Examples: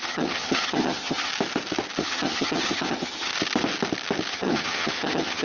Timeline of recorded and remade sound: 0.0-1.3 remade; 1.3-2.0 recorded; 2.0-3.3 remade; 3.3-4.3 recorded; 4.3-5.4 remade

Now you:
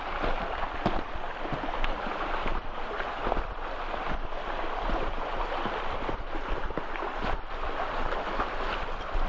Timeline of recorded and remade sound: 0.0-9.3 recorded

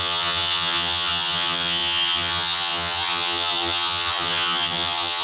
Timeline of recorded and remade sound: 0.0-5.2 remade

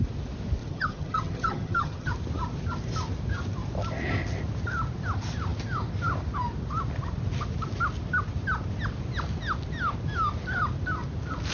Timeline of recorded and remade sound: 0.0-0.6 recorded; 0.6-2.1 remade; 2.1-11.5 recorded

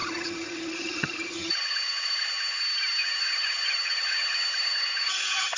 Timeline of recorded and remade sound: 0.0-2.6 remade; 2.6-3.0 recorded; 3.0-5.6 remade

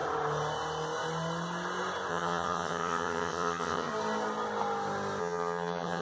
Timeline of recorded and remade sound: 0.0-2.1 recorded; 2.1-3.9 remade; 3.9-5.2 recorded; 5.2-6.0 remade

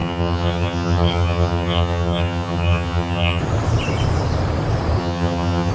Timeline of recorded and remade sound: 0.0-3.4 remade; 3.4-5.0 recorded; 5.0-5.7 remade